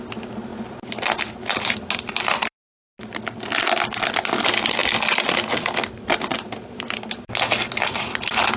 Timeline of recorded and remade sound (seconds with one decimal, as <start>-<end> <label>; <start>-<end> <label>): 0.0-8.6 recorded